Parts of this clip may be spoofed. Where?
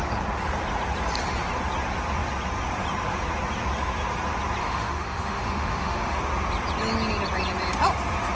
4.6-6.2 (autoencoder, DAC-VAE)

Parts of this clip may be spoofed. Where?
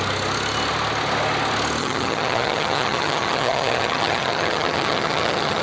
1.8-5.6 (vocoder, HiFi-GAN)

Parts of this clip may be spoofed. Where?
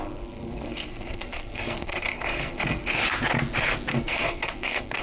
0.0-3.0 (codec, SNAC); 3.9-5.0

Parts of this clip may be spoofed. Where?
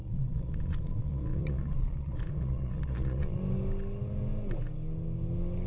0.0-3.4 (vocoder, Vocos)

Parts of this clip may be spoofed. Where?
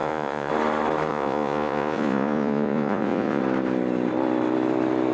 0.0-0.5 (vocoder, Vocos); 1.1-3.4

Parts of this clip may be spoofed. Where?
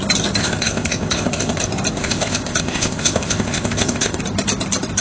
0.4-1.6 (codec, ZipCodec); 2.0-4.2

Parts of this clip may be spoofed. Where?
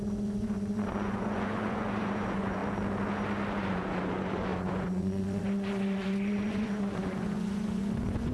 0.0-2.6 (vocoder, Vocos); 3.5-8.3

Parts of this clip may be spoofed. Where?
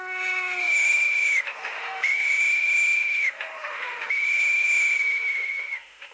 0.0-6.1 (autoencoder, DAC-VAE)